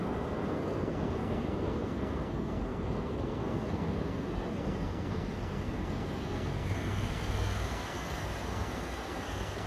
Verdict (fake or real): fake